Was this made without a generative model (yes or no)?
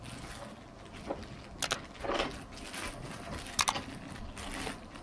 yes